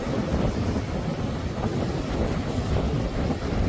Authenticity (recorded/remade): recorded